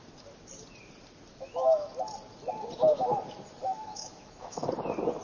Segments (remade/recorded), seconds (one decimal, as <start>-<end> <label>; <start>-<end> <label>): 0.0-1.3 recorded; 1.3-1.9 remade; 1.9-3.6 recorded; 3.6-4.7 remade; 4.7-5.2 recorded